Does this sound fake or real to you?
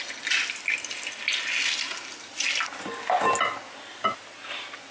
real